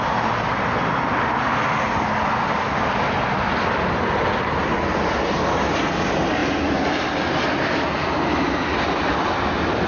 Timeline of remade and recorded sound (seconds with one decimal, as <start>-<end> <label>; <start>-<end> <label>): 0.0-9.9 recorded